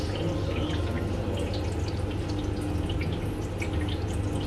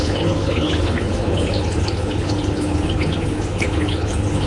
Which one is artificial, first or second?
second